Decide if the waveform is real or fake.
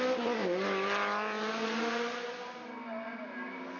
real